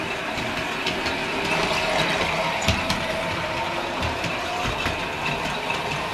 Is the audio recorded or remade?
recorded